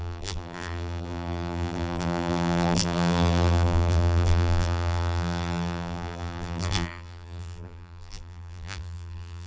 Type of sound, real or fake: fake